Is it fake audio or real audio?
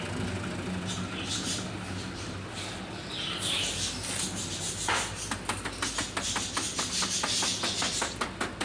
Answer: real